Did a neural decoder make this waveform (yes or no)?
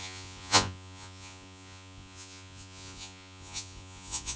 yes